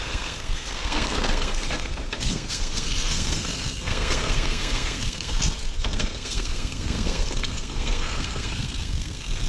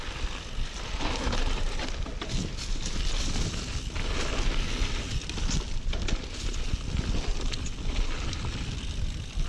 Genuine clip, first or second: second